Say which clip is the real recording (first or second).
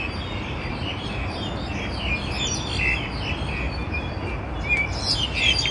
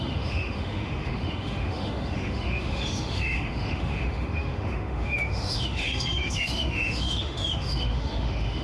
first